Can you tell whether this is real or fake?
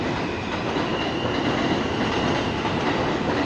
real